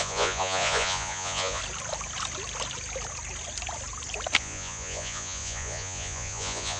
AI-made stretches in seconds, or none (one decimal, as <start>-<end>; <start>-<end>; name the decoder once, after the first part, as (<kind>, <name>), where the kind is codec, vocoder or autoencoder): 0.0-1.6 (vocoder, Vocos); 4.4-6.8

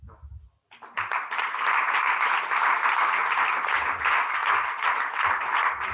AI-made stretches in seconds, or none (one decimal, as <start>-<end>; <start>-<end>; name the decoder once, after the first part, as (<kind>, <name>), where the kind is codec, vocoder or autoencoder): none